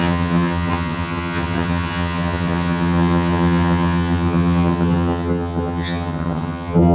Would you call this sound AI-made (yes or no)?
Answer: yes